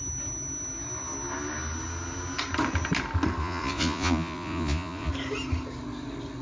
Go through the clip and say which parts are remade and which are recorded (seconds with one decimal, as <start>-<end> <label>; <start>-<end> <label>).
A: 0.0-3.4 recorded; 3.4-5.1 remade; 5.1-6.4 recorded

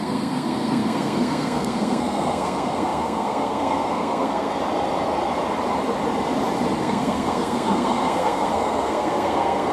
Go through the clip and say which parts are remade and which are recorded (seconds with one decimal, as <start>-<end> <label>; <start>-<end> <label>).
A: 0.0-4.6 remade; 4.6-6.8 recorded; 6.8-9.7 remade

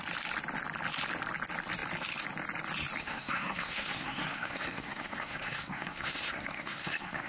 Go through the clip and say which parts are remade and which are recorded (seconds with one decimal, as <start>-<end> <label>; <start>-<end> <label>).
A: 0.0-3.0 recorded; 3.0-7.3 remade

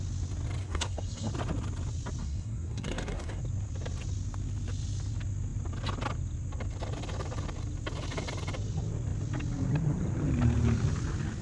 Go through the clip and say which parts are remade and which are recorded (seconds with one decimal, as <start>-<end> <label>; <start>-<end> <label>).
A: 0.0-0.6 recorded; 0.6-1.3 remade; 1.3-2.2 recorded; 2.2-3.4 remade; 3.4-11.4 recorded

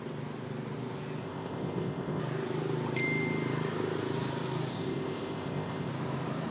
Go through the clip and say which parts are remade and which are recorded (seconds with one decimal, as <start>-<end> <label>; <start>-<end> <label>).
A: 0.0-1.2 recorded; 1.2-2.2 remade; 2.2-4.7 recorded; 4.7-5.9 remade; 5.9-6.5 recorded

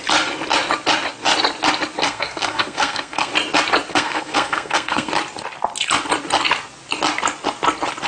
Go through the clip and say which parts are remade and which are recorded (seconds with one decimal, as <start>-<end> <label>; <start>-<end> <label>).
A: 0.0-2.0 recorded; 2.0-3.3 remade; 3.3-3.9 recorded; 3.9-5.1 remade; 5.1-8.1 recorded

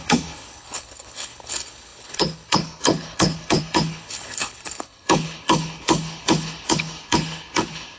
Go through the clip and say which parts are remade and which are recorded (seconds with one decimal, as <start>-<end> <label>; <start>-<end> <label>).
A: 0.0-8.0 remade